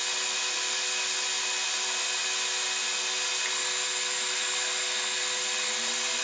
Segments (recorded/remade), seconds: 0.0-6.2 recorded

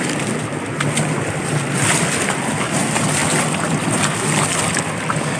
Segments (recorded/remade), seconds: 0.0-5.4 recorded